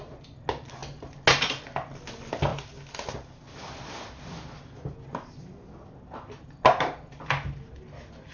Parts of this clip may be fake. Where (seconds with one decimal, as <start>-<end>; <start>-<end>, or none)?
2.5-3.1